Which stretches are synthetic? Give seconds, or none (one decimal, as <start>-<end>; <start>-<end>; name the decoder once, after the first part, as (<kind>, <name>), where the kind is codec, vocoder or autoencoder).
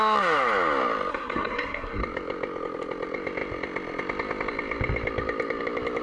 1.1-2.0 (codec, SNAC)